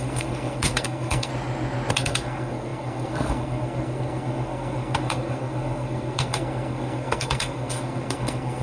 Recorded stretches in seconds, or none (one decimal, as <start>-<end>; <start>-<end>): 1.3-1.9